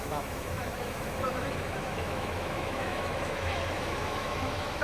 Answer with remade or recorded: remade